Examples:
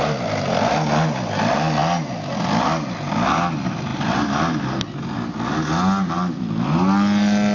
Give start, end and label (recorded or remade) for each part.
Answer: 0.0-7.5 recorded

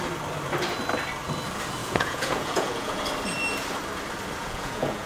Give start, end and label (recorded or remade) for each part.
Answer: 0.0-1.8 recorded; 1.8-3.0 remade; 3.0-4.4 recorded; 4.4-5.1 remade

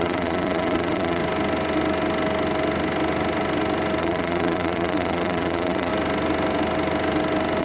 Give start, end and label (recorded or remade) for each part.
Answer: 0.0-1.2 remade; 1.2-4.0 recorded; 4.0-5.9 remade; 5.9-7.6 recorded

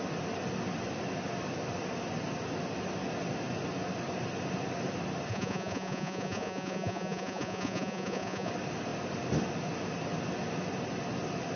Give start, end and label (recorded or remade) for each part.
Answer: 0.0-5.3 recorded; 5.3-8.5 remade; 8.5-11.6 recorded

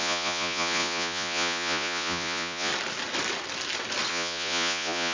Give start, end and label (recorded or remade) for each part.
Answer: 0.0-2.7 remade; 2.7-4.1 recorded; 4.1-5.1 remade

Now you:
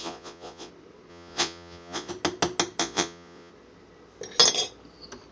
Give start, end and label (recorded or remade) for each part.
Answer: 0.0-0.7 remade; 0.7-1.1 recorded; 1.1-2.1 remade; 2.1-2.8 recorded; 2.8-3.5 remade; 3.5-5.3 recorded

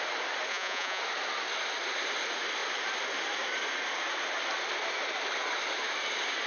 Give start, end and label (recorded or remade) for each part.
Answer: 0.0-0.5 recorded; 0.5-1.0 remade; 1.0-6.5 recorded